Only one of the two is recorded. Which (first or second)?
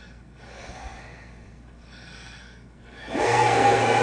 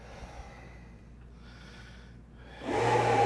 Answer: second